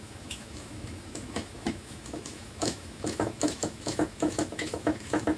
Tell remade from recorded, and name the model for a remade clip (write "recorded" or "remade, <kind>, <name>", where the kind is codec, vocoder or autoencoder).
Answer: remade, autoencoder, DAC-VAE